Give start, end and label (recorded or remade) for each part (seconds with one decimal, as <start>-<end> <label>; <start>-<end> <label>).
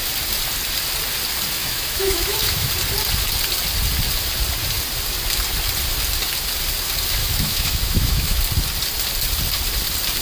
0.0-1.6 recorded; 1.6-2.7 remade; 2.7-7.2 recorded; 7.2-8.4 remade; 8.4-10.2 recorded